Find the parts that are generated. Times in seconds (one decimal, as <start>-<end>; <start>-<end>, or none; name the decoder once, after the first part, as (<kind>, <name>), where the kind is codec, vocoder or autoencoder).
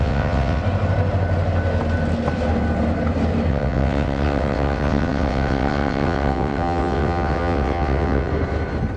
0.0-0.6 (vocoder, WaveNeXt); 3.5-8.3